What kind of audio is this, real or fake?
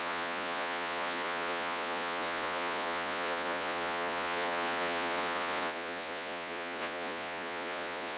fake